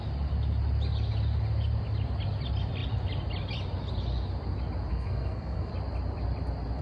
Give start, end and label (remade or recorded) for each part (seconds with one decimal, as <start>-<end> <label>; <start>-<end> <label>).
0.0-4.9 recorded; 4.9-5.7 remade; 5.7-6.8 recorded